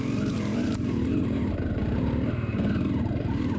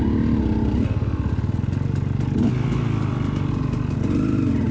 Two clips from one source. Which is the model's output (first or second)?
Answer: first